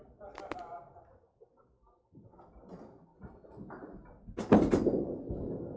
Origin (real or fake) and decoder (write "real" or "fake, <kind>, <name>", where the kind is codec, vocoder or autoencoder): real